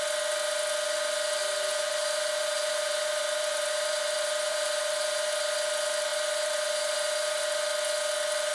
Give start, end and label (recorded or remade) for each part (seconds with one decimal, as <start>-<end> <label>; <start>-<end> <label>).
0.0-1.4 recorded; 1.4-5.3 remade; 5.3-6.1 recorded; 6.1-7.4 remade; 7.4-8.5 recorded

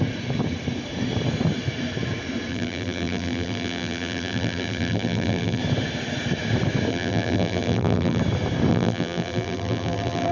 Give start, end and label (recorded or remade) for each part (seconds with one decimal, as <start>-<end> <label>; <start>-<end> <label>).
0.0-2.5 recorded; 2.5-5.6 remade; 5.6-6.9 recorded; 6.9-8.2 remade; 8.2-8.7 recorded; 8.7-10.3 remade

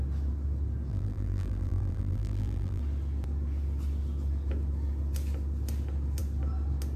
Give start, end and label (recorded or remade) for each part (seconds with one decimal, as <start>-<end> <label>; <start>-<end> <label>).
0.0-0.9 recorded; 0.9-2.8 remade; 2.8-7.0 recorded

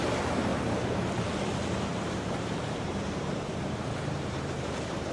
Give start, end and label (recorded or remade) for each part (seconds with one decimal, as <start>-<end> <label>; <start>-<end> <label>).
0.0-0.5 recorded; 0.5-1.1 remade; 1.1-1.9 recorded; 1.9-5.1 remade

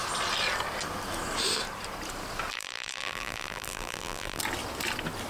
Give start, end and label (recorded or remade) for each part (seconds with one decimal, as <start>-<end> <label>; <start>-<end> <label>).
0.0-2.5 recorded; 2.5-4.4 remade; 4.4-5.3 recorded

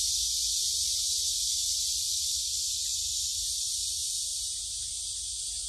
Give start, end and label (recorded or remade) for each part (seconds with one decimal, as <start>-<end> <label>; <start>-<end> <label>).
0.0-3.3 recorded; 3.3-3.8 remade; 3.8-4.3 recorded; 4.3-4.8 remade; 4.8-5.7 recorded

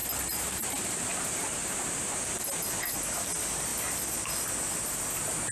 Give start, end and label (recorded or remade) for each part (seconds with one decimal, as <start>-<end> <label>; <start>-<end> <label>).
0.0-2.2 remade; 2.2-5.5 recorded

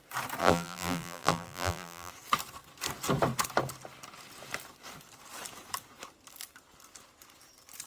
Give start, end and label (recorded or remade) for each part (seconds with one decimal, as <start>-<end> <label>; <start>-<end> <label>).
0.0-0.4 recorded; 0.4-2.1 remade; 2.1-7.9 recorded